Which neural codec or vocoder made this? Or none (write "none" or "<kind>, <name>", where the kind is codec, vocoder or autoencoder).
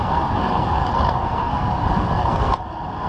codec, SNAC